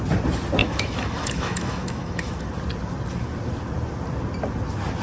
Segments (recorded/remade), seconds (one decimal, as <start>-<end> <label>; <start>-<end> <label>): 0.0-0.6 recorded; 0.6-2.5 remade; 2.5-5.0 recorded